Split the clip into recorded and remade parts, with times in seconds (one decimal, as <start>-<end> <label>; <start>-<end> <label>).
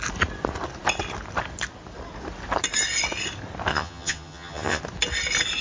0.0-3.7 recorded; 3.7-4.8 remade; 4.8-5.6 recorded